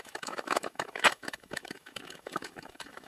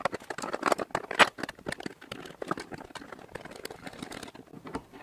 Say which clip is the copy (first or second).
first